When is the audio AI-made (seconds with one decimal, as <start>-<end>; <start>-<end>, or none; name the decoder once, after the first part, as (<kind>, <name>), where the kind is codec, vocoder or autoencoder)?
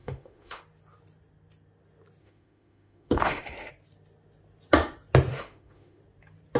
0.0-0.6 (autoencoder, DAC-VAE); 2.2-3.7; 5.3-6.0